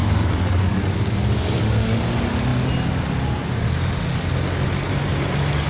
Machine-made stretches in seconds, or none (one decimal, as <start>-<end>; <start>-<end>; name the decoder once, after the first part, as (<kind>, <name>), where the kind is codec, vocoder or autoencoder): 0.0-2.1 (codec, DAC)